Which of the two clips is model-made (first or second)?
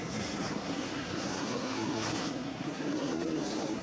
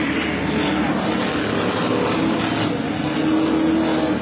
first